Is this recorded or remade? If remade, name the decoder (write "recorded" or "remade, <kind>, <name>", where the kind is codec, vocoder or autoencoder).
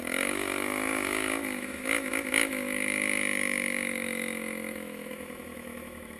remade, autoencoder, DAC-VAE